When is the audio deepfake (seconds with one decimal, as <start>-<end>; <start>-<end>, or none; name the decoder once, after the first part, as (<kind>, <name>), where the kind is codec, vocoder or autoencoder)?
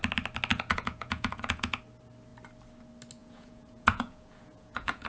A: 0.5-1.8 (vocoder, Vocos); 3.2-5.1